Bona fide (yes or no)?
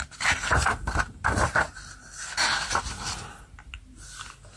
yes